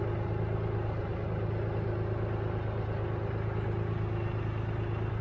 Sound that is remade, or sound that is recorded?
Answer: recorded